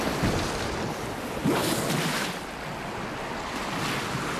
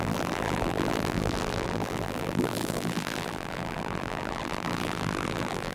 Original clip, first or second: first